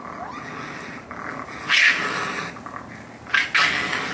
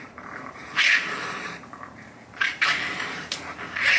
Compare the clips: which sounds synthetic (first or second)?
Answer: second